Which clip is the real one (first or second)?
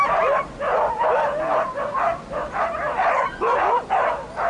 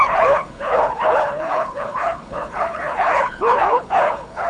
first